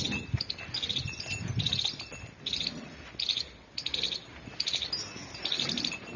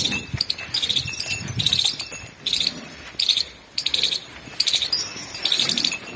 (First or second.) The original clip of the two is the first